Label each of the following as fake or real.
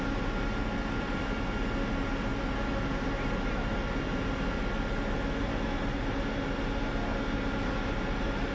real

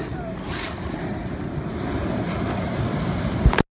real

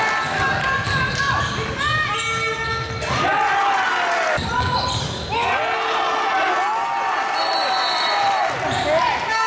real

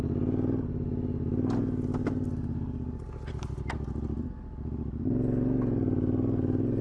real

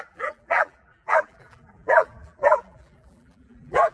fake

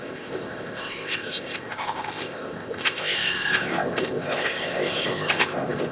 fake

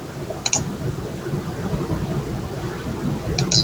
real